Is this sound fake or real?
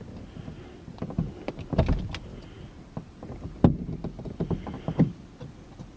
real